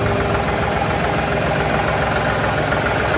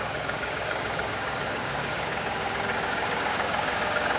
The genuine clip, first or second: first